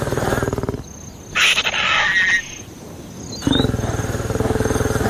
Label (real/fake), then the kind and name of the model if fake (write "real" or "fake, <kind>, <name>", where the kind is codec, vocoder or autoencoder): real